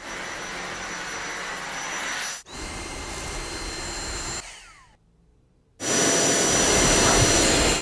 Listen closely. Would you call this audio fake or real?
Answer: real